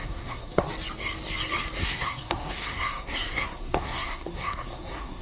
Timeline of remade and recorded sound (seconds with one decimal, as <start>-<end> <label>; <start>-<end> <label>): 0.0-0.6 remade; 0.6-1.8 recorded; 1.8-5.2 remade